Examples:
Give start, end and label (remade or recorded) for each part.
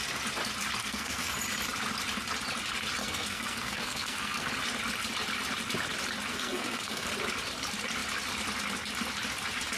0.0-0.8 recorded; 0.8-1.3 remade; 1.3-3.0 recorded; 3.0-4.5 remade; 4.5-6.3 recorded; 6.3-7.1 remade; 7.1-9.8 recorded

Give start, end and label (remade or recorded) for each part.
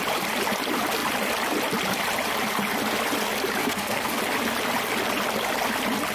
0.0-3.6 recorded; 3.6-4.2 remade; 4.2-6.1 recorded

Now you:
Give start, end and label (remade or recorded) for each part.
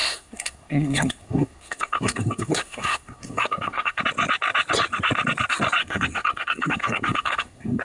0.0-4.0 remade; 4.0-5.8 recorded; 5.8-7.8 remade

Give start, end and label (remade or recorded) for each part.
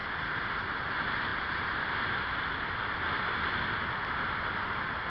0.0-5.1 recorded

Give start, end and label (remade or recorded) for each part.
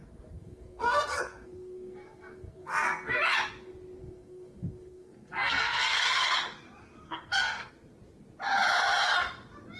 0.0-3.2 remade; 3.2-4.0 recorded; 4.0-6.3 remade; 6.3-6.8 recorded; 6.8-7.7 remade; 7.7-9.8 recorded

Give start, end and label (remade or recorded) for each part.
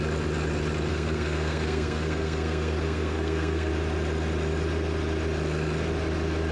0.0-0.9 recorded; 0.9-3.7 remade; 3.7-6.5 recorded